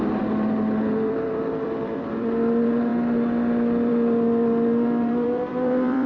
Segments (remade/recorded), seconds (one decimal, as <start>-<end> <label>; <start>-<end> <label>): 0.0-2.9 remade; 2.9-3.9 recorded; 3.9-6.1 remade

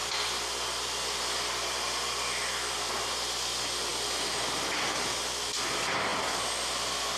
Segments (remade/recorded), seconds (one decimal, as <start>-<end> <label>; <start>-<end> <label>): 0.0-7.2 recorded

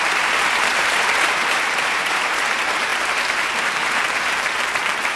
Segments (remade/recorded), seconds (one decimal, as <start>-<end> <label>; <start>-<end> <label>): 0.0-5.2 remade